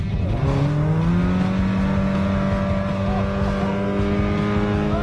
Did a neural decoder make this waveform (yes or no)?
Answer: no